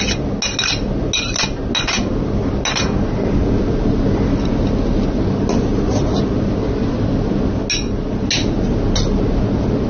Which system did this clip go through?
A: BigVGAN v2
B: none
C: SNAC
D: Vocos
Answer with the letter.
B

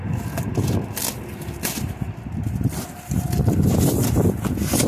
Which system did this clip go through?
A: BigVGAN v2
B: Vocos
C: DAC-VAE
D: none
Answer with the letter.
D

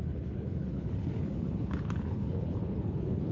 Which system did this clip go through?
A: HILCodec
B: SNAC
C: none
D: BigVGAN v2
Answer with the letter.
A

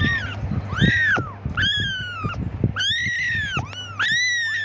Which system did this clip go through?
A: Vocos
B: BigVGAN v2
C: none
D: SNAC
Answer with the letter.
C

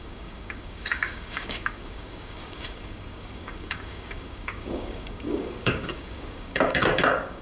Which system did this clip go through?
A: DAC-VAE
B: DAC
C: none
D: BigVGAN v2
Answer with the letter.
B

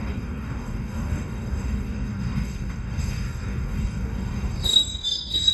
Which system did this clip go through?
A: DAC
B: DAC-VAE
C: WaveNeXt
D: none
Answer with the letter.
A